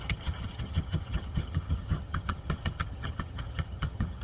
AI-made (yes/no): yes